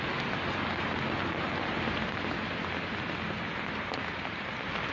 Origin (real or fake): real